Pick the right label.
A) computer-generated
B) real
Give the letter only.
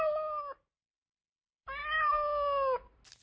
B